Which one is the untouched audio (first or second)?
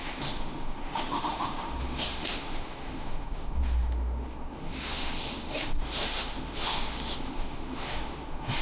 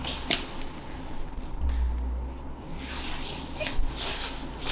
second